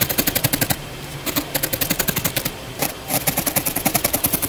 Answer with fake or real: fake